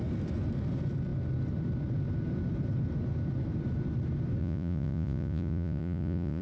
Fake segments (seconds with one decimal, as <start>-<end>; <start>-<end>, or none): 4.4-6.4